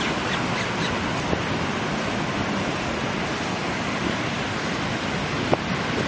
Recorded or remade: recorded